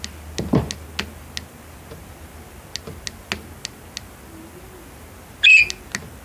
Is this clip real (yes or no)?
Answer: yes